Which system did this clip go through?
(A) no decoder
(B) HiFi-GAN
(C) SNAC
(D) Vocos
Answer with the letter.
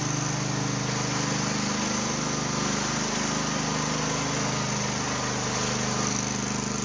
A